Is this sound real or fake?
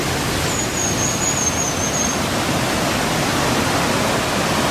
real